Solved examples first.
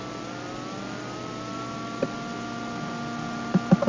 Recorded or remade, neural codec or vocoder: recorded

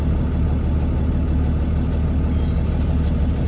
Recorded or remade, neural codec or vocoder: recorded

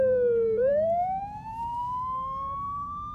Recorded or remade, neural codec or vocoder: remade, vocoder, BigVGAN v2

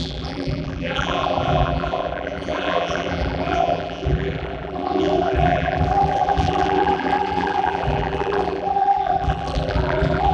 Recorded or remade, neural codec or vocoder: remade, vocoder, BigVGAN v2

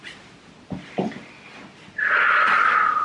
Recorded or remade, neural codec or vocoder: recorded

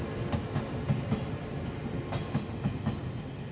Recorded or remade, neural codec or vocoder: recorded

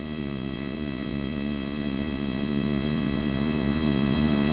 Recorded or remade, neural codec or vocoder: remade, vocoder, Vocos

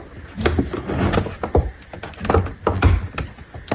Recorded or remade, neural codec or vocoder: recorded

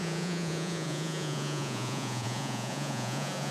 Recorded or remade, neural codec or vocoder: remade, vocoder, Vocos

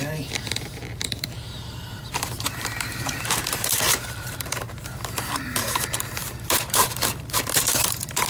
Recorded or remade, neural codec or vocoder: remade, vocoder, BigVGAN v2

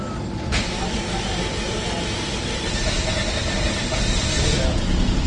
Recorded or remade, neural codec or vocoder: recorded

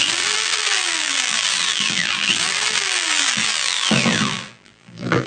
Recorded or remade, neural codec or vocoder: remade, vocoder, BigVGAN v2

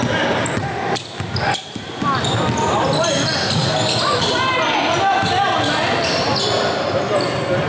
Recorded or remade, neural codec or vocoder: recorded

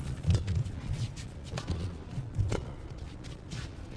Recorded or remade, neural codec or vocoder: remade, vocoder, Vocos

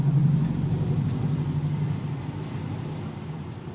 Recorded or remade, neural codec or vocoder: recorded